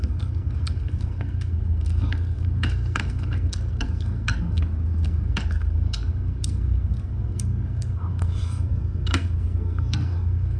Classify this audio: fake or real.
fake